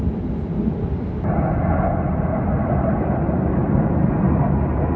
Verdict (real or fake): real